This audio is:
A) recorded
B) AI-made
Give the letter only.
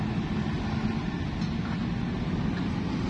A